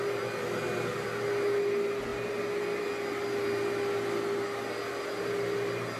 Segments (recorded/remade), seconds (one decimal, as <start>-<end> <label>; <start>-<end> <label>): 0.0-6.0 recorded